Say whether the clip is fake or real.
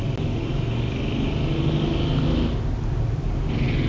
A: real